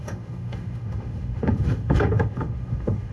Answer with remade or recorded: remade